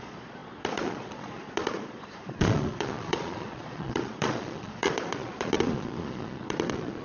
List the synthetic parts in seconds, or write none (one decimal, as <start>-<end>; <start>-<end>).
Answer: 0.0-7.0